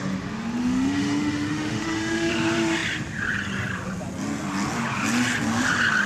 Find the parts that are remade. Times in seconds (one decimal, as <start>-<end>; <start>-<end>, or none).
0.6-2.3